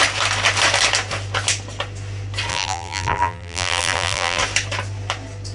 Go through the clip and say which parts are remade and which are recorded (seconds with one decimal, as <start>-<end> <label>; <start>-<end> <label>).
0.0-2.5 recorded; 2.5-4.4 remade; 4.4-5.5 recorded